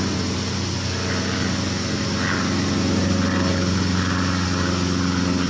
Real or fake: real